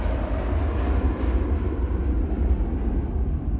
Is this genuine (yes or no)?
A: yes